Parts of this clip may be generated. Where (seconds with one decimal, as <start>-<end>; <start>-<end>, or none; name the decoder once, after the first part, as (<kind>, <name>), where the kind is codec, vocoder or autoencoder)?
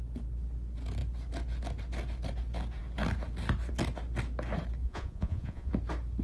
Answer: 4.8-5.7 (vocoder, Vocos)